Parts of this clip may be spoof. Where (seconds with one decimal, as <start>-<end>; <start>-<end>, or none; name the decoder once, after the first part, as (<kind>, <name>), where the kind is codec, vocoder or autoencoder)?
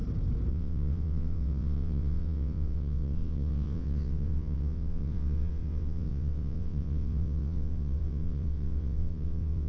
0.5-9.7 (vocoder, WaveNeXt)